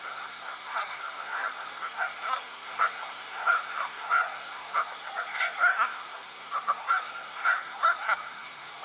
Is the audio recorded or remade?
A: remade